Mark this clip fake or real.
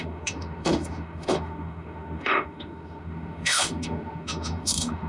fake